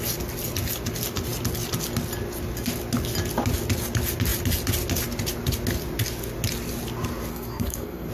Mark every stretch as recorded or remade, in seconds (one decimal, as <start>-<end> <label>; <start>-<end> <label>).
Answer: 0.0-7.3 recorded; 7.3-8.1 remade